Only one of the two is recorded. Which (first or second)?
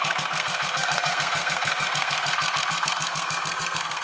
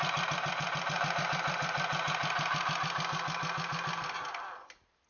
second